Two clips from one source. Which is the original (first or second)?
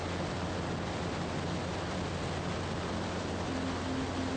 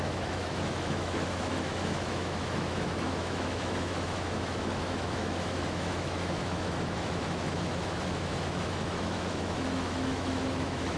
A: first